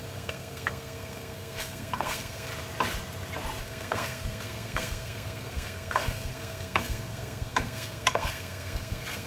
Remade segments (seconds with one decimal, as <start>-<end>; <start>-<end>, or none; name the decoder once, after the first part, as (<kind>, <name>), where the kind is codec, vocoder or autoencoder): 0.0-2.5 (codec, SNAC); 3.6-9.3